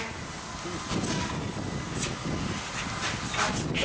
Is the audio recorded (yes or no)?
yes